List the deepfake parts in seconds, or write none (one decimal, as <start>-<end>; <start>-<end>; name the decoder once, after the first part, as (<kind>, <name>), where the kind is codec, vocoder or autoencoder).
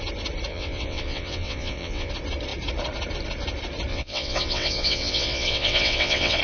0.5-2.1 (vocoder, WaveNeXt); 3.9-6.4